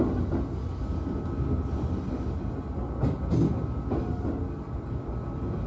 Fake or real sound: real